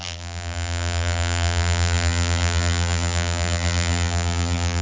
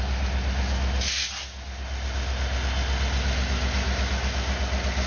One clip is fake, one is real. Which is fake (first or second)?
first